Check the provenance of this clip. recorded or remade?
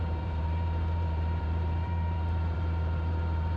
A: remade